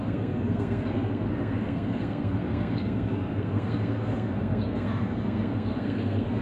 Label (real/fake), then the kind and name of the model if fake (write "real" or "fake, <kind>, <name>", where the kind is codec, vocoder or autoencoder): fake, codec, SNAC